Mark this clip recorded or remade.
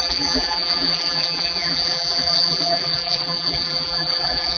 remade